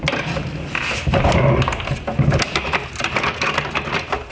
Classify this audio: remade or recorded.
recorded